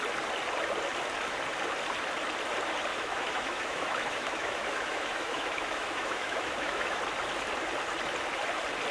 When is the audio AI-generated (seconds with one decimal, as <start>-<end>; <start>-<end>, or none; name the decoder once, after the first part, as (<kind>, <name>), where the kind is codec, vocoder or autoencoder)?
2.9-7.0 (autoencoder, DAC-VAE)